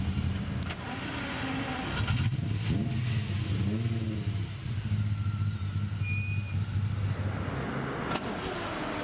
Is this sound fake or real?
real